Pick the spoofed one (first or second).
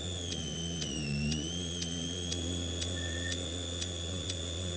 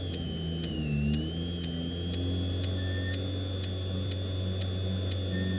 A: first